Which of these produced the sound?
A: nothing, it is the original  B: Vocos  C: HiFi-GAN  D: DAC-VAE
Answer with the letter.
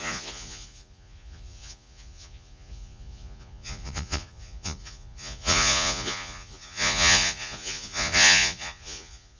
B